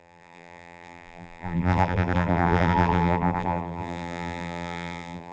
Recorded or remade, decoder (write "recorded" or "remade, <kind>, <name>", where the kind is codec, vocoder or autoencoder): remade, vocoder, BigVGAN v2